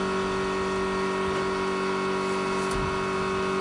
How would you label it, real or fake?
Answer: real